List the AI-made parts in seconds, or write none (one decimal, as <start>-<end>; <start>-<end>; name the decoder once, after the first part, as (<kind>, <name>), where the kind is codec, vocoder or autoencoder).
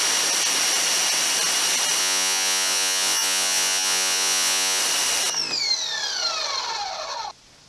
2.0-4.8 (vocoder, Vocos)